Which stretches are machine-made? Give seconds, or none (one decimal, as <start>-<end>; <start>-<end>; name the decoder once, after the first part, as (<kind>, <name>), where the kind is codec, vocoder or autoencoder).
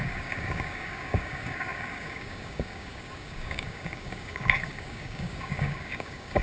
0.0-6.4 (codec, DAC)